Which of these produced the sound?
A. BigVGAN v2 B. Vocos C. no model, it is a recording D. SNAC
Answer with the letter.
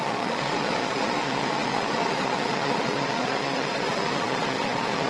B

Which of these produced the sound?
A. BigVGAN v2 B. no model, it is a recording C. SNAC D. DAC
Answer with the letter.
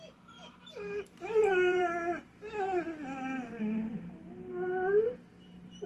A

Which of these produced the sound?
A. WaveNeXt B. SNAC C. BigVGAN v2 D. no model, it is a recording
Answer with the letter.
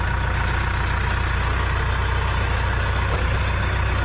D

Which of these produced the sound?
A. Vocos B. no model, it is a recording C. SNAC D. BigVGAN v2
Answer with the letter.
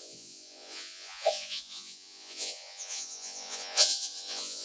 A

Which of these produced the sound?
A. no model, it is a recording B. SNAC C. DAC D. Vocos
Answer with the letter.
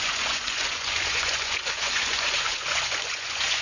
D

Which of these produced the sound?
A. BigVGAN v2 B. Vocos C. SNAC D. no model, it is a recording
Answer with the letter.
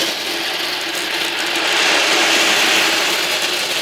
D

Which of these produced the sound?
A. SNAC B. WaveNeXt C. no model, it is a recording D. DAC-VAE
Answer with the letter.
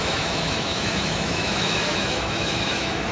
D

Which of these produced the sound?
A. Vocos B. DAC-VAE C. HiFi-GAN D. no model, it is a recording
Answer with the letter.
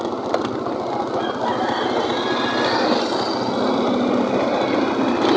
D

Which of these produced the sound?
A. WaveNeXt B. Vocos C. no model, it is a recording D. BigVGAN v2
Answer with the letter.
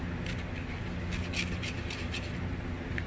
C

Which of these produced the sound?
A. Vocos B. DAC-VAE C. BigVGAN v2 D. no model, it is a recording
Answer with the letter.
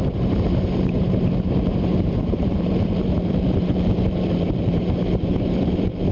C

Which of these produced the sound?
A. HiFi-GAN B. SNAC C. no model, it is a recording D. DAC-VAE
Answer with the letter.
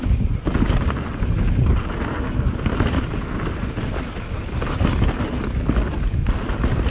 C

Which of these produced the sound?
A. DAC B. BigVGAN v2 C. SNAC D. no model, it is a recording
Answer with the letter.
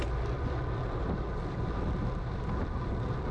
D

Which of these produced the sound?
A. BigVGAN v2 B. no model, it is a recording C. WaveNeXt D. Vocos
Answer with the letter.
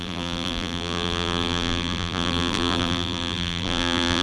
A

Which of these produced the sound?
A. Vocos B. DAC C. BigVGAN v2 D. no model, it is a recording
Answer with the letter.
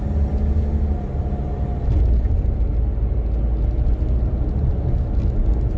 D